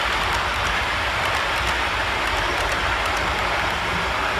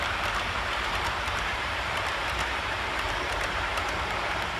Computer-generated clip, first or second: second